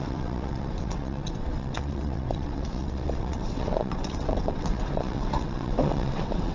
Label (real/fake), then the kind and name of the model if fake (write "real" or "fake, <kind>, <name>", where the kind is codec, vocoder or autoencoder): fake, vocoder, WaveNeXt